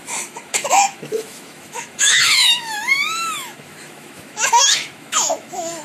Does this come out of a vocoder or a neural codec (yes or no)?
yes